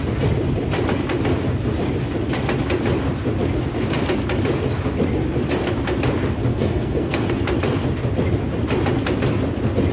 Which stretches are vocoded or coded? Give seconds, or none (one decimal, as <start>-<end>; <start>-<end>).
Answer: 6.5-7.3